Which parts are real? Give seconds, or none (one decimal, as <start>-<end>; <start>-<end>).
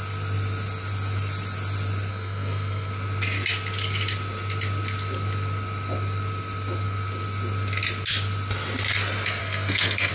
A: 0.0-2.1; 2.9-9.4